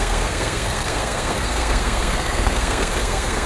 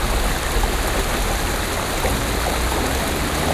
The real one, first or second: second